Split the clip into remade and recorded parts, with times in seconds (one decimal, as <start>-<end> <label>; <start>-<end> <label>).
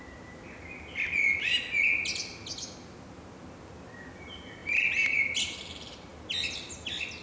0.0-7.2 recorded